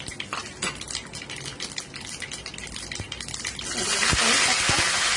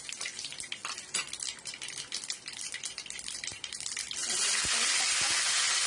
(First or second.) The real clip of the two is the first